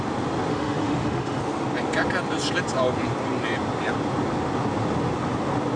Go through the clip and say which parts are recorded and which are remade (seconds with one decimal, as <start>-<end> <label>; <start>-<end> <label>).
0.0-0.5 recorded; 0.5-1.4 remade; 1.4-5.8 recorded